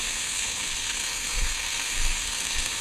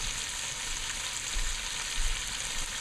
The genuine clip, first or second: second